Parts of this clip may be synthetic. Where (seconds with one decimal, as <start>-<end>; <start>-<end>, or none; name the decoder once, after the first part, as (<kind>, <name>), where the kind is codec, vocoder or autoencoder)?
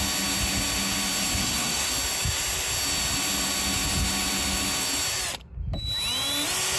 1.4-1.9 (codec, SNAC)